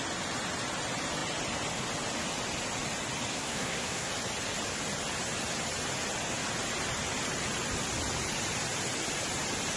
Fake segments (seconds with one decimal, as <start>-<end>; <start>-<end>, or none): 3.3-4.1